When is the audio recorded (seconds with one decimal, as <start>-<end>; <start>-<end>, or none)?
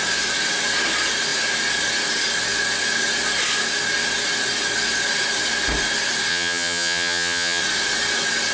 0.0-6.3; 7.6-8.5